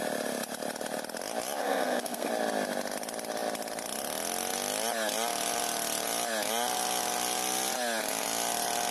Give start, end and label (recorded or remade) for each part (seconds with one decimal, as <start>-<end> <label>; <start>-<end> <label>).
0.0-1.6 recorded; 1.6-2.3 remade; 2.3-8.9 recorded